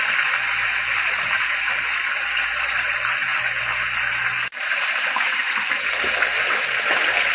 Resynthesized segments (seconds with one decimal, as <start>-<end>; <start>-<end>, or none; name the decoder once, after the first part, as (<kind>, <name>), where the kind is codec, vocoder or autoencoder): 0.8-2.0 (vocoder, BigVGAN v2); 3.3-5.9